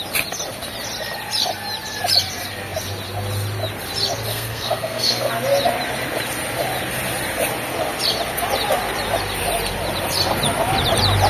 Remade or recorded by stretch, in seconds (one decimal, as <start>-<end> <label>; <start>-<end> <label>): 0.0-4.3 recorded; 4.3-5.3 remade; 5.3-11.3 recorded